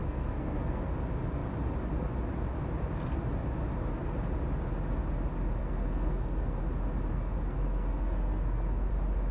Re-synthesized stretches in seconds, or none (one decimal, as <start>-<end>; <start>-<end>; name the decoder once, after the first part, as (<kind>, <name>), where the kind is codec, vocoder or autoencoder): 0.0-0.9 (codec, SNAC); 5.6-6.6; 7.1-8.9